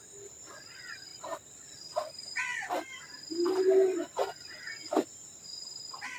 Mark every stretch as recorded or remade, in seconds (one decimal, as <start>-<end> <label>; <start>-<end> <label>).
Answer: 0.0-1.1 recorded; 1.1-1.9 remade; 1.9-2.5 recorded; 2.5-3.3 remade; 3.3-6.2 recorded